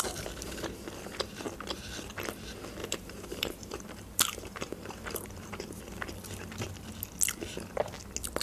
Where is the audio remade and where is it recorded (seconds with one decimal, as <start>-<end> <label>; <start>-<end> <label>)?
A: 0.0-2.8 recorded; 2.8-5.8 remade; 5.8-8.4 recorded